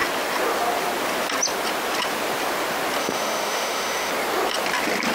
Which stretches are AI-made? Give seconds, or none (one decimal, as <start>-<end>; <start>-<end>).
3.0-4.1